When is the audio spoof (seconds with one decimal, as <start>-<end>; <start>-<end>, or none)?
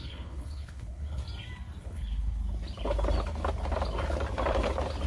0.0-1.2; 1.8-2.4